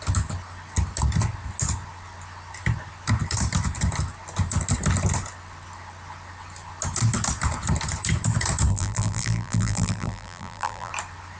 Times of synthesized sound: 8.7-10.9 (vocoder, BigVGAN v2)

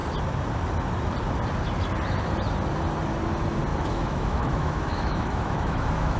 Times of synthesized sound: 3.7-6.2 (autoencoder, DAC-VAE)

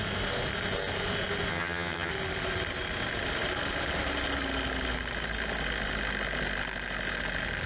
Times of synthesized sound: 1.5-2.1 (vocoder, HiFi-GAN)

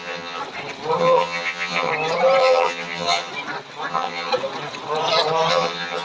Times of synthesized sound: 0.0-0.4 (vocoder, HiFi-GAN); 1.0-1.9; 2.4-3.3; 3.9-4.3; 5.5-6.0

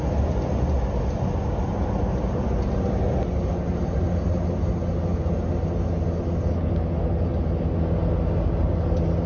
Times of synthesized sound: none